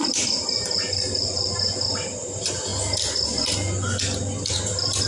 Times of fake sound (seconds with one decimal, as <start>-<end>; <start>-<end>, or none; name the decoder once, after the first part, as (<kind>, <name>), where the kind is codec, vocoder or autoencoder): 0.0-2.7 (vocoder, BigVGAN v2); 4.5-5.1